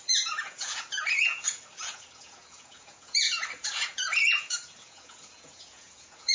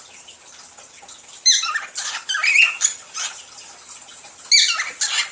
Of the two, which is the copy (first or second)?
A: first